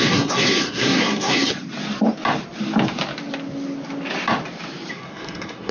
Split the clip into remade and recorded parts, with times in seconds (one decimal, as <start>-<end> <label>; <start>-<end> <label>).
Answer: 0.0-1.5 remade; 1.5-4.9 recorded; 4.9-5.7 remade

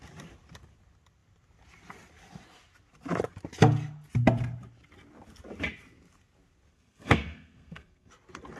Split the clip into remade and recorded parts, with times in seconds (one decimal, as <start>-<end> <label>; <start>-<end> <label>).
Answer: 0.0-6.7 recorded; 6.7-8.1 remade; 8.1-8.6 recorded

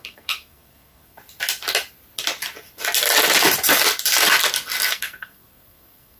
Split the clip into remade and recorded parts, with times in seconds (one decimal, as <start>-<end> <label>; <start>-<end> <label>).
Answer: 0.0-1.2 remade; 1.2-4.9 recorded; 4.9-6.2 remade

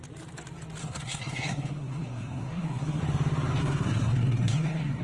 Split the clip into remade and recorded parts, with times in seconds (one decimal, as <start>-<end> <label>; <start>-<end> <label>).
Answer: 0.0-0.8 recorded; 0.8-3.0 remade; 3.0-3.6 recorded; 3.6-5.0 remade

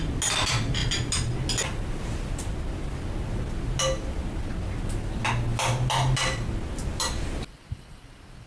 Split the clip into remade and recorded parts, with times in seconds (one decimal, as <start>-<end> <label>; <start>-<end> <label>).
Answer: 0.0-8.5 recorded

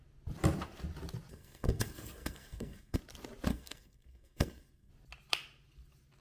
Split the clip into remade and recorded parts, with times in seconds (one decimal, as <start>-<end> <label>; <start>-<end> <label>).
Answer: 0.0-1.3 recorded; 1.3-3.0 remade; 3.0-3.5 recorded; 3.5-4.9 remade; 4.9-6.2 recorded

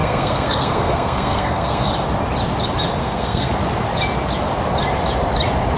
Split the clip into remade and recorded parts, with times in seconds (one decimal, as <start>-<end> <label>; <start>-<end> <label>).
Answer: 0.0-1.9 remade; 1.9-3.0 recorded; 3.0-3.5 remade; 3.5-5.8 recorded

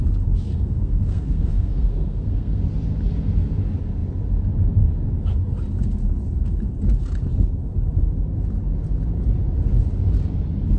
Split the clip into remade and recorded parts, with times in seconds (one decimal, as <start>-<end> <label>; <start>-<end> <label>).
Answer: 0.0-0.5 recorded; 0.5-2.6 remade; 2.6-10.8 recorded